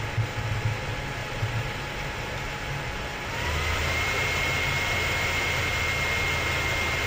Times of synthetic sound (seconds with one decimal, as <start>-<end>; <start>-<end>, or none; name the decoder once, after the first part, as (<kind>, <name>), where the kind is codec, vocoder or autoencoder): 1.2-5.5 (vocoder, BigVGAN v2)